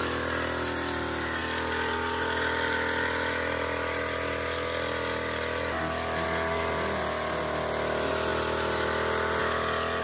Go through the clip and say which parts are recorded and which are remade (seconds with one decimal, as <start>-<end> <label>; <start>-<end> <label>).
0.0-10.0 recorded